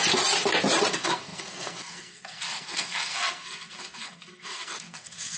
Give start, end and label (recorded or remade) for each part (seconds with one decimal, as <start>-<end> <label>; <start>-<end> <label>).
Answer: 0.0-0.9 recorded; 0.9-5.4 remade